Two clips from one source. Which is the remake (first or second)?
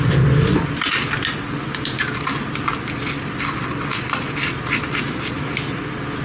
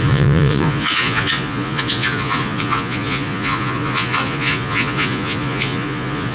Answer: second